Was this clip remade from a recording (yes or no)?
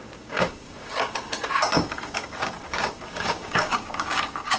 yes